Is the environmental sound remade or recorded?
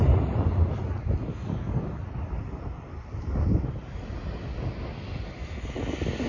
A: recorded